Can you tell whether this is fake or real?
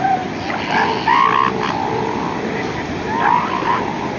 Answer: real